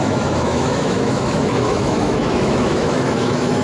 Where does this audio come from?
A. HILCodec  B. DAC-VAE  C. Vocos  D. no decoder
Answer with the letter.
B